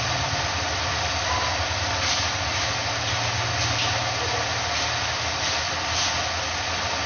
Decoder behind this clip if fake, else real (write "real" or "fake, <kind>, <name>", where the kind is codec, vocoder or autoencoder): real